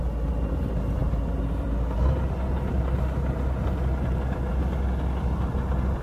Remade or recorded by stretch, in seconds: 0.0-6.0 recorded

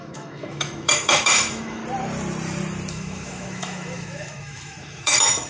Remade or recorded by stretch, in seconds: 0.0-1.8 remade; 1.8-2.9 recorded; 2.9-5.5 remade

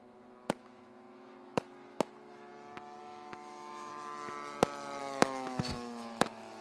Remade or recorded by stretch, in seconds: 0.0-2.5 remade; 2.5-3.0 recorded; 3.0-3.9 remade; 3.9-5.0 recorded; 5.0-6.6 remade

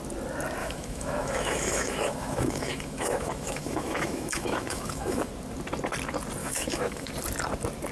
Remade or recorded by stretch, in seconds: 0.0-0.6 recorded; 0.6-5.3 remade; 5.3-6.4 recorded; 6.4-7.1 remade; 7.1-7.9 recorded

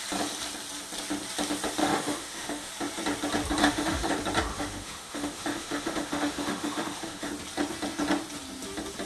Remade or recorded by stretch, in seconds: 0.0-1.8 recorded; 1.8-2.7 remade; 2.7-3.6 recorded; 3.6-4.1 remade; 4.1-4.5 recorded; 4.5-7.3 remade; 7.3-9.1 recorded

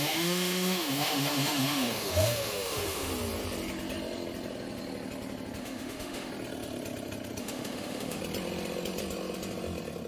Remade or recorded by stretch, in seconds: 0.0-3.1 remade; 3.1-5.6 recorded; 5.6-6.3 remade; 6.3-7.4 recorded; 7.4-8.2 remade; 8.2-10.1 recorded